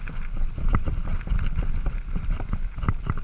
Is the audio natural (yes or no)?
yes